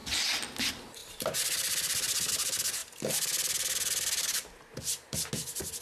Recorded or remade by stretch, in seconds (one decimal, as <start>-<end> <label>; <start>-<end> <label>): 0.0-1.0 recorded; 1.0-2.3 remade; 2.3-2.8 recorded; 2.8-5.3 remade; 5.3-5.8 recorded